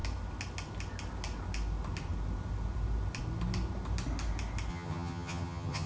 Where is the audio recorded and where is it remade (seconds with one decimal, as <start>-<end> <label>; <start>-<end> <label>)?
0.0-4.7 recorded; 4.7-5.9 remade